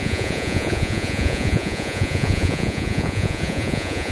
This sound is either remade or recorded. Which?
remade